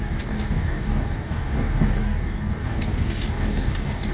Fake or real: fake